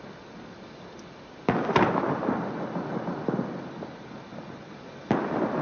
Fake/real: real